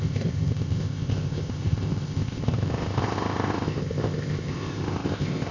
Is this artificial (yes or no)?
yes